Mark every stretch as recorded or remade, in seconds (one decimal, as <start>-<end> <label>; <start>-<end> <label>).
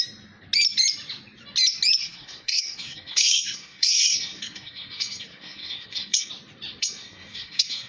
0.0-2.0 recorded; 2.0-6.3 remade; 6.3-6.8 recorded; 6.8-7.9 remade